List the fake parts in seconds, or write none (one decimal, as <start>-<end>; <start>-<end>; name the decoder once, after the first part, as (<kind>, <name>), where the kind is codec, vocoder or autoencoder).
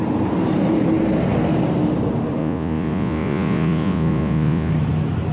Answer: 2.4-4.7 (vocoder, Vocos)